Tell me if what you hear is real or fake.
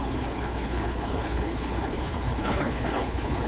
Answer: fake